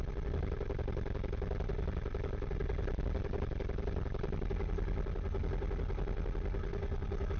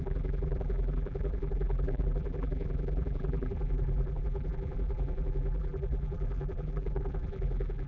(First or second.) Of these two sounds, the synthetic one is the second